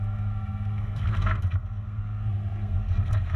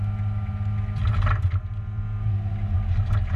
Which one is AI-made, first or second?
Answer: first